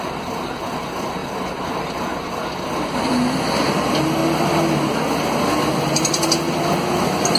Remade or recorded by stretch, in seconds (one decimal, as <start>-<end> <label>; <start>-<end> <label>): 0.0-7.4 recorded